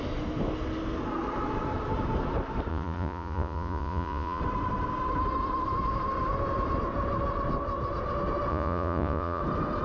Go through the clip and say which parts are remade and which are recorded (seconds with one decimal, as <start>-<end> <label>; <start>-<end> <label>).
0.0-2.7 recorded; 2.7-4.4 remade; 4.4-8.5 recorded; 8.5-9.4 remade; 9.4-9.8 recorded

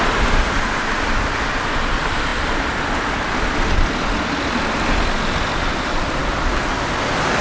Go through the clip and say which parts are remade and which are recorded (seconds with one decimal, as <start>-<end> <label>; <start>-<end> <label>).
0.0-6.2 remade; 6.2-6.9 recorded; 6.9-7.4 remade

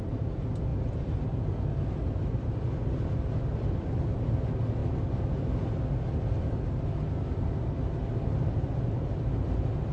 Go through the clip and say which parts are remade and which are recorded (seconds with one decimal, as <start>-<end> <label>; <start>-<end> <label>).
0.0-9.9 recorded

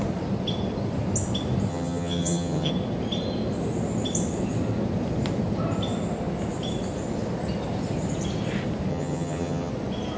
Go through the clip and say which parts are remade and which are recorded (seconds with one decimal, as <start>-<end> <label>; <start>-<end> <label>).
0.0-1.7 recorded; 1.7-2.7 remade; 2.7-8.9 recorded; 8.9-9.7 remade; 9.7-10.2 recorded